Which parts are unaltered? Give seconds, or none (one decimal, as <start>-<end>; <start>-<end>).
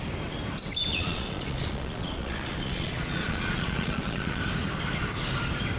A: 0.0-0.9; 4.4-5.8